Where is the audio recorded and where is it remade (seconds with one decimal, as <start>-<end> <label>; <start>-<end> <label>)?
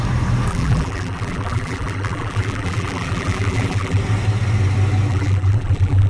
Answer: 0.0-0.5 recorded; 0.5-4.0 remade; 4.0-5.1 recorded; 5.1-6.1 remade